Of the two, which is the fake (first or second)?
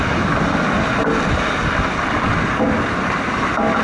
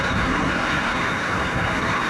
second